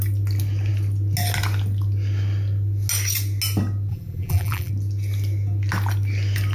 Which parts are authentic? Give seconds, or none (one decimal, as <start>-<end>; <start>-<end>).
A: 0.0-3.9; 4.7-6.5